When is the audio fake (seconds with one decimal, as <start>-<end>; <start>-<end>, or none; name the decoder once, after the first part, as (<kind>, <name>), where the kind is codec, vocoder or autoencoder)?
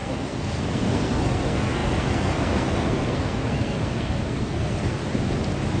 0.0-5.0 (codec, SNAC)